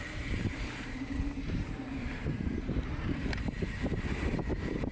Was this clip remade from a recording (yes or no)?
yes